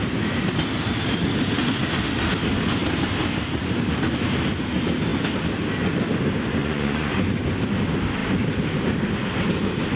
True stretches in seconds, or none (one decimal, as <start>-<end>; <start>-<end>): 0.0-6.6; 7.1-10.0